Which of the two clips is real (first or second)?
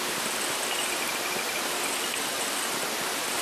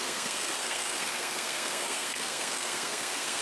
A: first